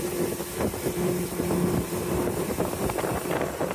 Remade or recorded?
remade